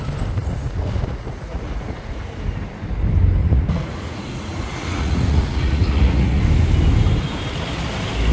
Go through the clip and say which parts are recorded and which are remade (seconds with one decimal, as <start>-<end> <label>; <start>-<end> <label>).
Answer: 0.0-0.4 recorded; 0.4-2.2 remade; 2.2-3.4 recorded; 3.4-6.4 remade; 6.4-8.3 recorded